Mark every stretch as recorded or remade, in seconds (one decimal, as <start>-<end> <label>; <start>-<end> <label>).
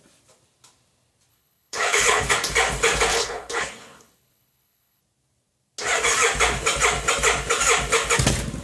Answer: 0.0-1.3 recorded; 1.3-2.3 remade; 2.3-3.1 recorded; 3.1-5.0 remade; 5.0-8.6 recorded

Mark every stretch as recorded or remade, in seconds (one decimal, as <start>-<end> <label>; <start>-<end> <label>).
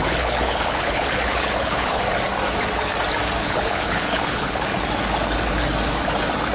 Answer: 0.0-2.0 remade; 2.0-3.4 recorded; 3.4-4.6 remade; 4.6-6.5 recorded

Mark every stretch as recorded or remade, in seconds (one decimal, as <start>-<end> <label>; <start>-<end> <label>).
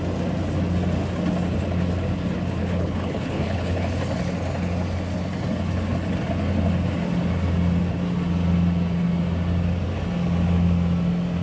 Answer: 0.0-2.6 recorded; 2.6-3.8 remade; 3.8-11.4 recorded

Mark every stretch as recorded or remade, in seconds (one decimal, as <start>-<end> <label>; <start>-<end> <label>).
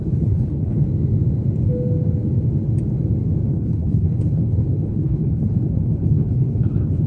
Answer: 0.0-0.8 remade; 0.8-3.5 recorded; 3.5-7.1 remade